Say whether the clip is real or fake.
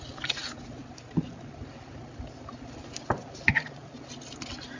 real